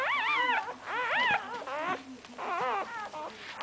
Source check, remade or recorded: recorded